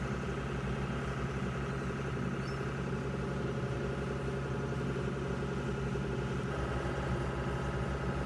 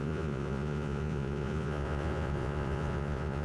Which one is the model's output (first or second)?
second